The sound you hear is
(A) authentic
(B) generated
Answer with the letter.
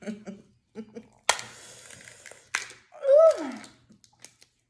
A